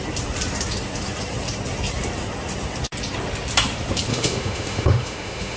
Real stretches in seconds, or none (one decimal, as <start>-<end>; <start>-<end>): 0.0-4.1